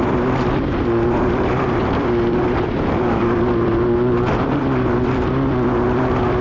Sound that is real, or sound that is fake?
fake